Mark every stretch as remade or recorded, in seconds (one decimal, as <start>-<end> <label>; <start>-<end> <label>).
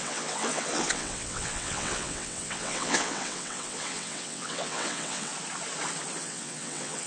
0.0-5.3 remade; 5.3-6.2 recorded; 6.2-7.1 remade